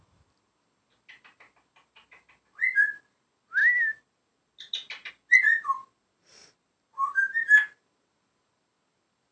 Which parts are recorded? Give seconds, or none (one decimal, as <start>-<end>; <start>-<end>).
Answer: 0.0-9.3